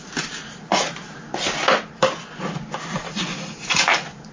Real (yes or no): yes